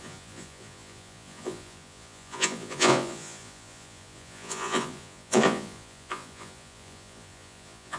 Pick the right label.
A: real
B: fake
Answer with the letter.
B